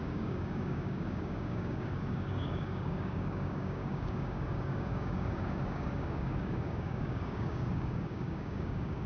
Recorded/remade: remade